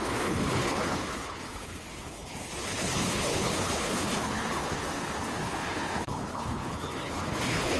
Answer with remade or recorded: remade